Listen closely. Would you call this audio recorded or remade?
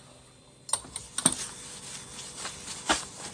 recorded